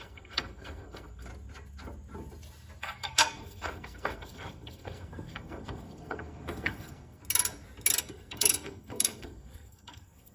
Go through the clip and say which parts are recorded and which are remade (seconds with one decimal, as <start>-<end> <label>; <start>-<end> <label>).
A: 0.0-1.3 remade; 1.3-2.8 recorded; 2.8-7.2 remade; 7.2-8.0 recorded; 8.0-10.3 remade